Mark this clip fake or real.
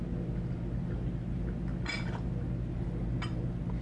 real